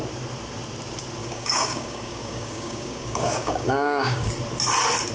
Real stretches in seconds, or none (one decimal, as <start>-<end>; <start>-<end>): 0.0-1.2; 4.3-5.1